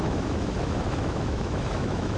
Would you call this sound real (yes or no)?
no